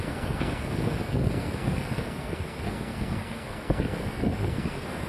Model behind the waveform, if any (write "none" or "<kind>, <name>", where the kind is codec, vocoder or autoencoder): codec, SNAC